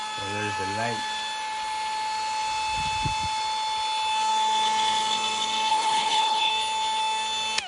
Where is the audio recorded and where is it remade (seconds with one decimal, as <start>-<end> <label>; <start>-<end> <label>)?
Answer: 0.0-5.7 recorded; 5.7-6.5 remade; 6.5-7.7 recorded

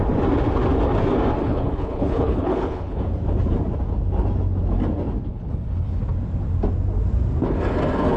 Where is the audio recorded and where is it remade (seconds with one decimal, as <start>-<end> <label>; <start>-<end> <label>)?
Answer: 0.0-1.4 recorded; 1.4-3.0 remade; 3.0-5.3 recorded; 5.3-6.0 remade; 6.0-8.2 recorded

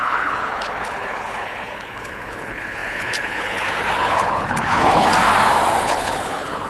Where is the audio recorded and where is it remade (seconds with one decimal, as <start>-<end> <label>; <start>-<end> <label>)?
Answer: 0.0-5.1 remade; 5.1-5.8 recorded; 5.8-6.7 remade